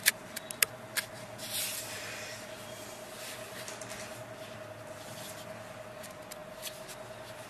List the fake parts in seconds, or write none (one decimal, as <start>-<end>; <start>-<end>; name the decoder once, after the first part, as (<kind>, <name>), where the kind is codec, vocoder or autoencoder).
none